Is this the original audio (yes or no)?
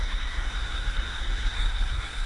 no